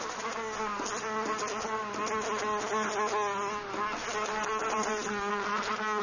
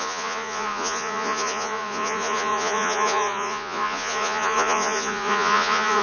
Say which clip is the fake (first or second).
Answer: second